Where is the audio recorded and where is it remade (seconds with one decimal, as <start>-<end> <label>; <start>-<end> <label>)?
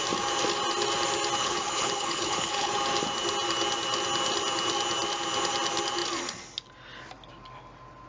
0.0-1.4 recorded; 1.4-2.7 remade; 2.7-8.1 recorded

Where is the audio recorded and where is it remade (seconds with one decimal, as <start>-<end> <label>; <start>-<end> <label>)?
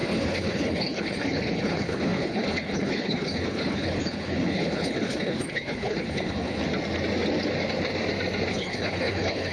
0.0-6.6 remade; 6.6-8.5 recorded; 8.5-9.5 remade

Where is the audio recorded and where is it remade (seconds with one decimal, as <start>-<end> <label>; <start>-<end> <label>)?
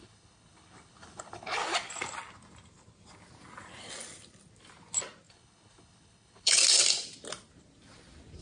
0.0-1.6 remade; 1.6-5.3 recorded; 5.3-6.6 remade; 6.6-8.4 recorded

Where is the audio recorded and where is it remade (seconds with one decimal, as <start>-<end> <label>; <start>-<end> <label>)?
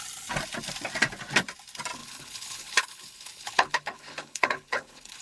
0.0-2.0 recorded; 2.0-5.2 remade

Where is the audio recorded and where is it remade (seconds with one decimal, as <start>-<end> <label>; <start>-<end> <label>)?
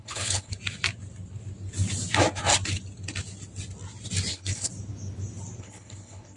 0.0-0.5 remade; 0.5-4.3 recorded; 4.3-4.7 remade; 4.7-5.6 recorded; 5.6-6.4 remade